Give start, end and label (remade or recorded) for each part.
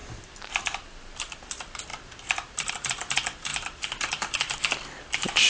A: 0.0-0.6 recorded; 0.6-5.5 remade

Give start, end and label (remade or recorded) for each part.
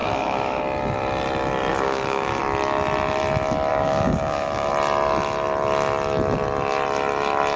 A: 0.0-0.6 remade; 0.6-1.7 recorded; 1.7-2.4 remade; 2.4-3.7 recorded; 3.7-4.7 remade; 4.7-7.6 recorded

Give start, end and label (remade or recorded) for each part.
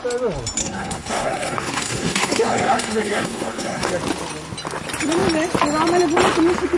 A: 0.0-0.6 recorded; 0.6-3.9 remade; 3.9-6.8 recorded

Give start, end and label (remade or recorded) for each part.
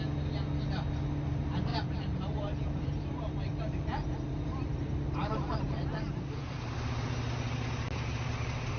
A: 0.0-1.7 recorded; 1.7-6.3 remade; 6.3-8.8 recorded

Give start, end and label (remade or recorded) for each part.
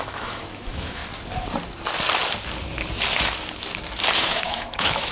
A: 0.0-1.0 remade; 1.0-4.1 recorded; 4.1-5.1 remade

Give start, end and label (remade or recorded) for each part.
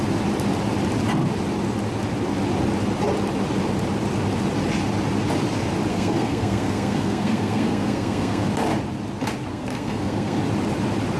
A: 0.0-5.9 recorded; 5.9-8.5 remade; 8.5-9.5 recorded; 9.5-10.4 remade; 10.4-11.2 recorded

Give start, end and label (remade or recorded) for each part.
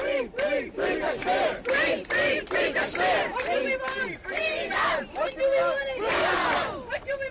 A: 0.0-1.2 recorded; 1.2-1.9 remade; 1.9-7.3 recorded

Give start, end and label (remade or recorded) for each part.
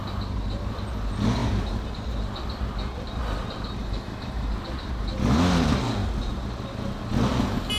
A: 0.0-3.8 recorded; 3.8-4.5 remade; 4.5-7.8 recorded